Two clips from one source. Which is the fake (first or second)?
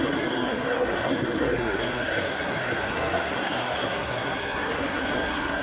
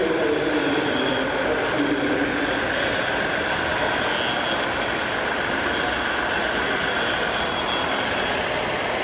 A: first